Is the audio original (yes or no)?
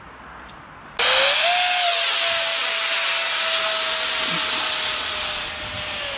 yes